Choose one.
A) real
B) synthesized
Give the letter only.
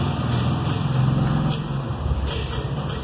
A